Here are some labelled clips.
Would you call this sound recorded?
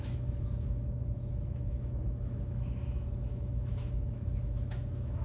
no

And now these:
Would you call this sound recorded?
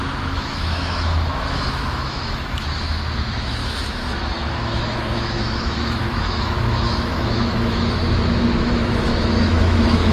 no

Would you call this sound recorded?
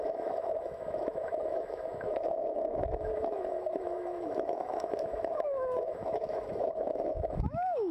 no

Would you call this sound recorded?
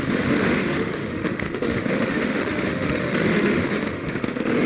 no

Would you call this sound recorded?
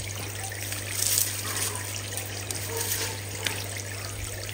yes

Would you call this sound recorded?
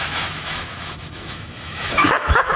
no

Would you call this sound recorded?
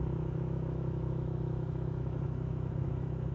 no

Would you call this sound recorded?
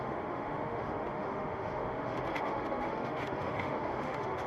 no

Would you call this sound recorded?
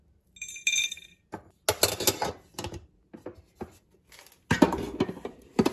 yes